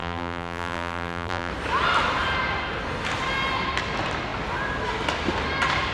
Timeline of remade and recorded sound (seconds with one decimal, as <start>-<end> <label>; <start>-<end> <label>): 0.0-1.5 remade; 1.5-5.9 recorded